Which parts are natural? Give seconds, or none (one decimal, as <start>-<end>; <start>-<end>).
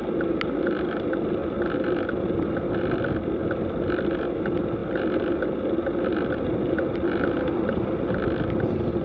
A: 0.0-9.0